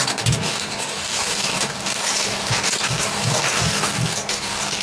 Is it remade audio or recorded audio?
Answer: remade